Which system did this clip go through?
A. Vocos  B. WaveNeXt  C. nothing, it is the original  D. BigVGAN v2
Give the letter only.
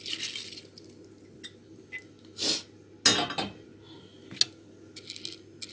C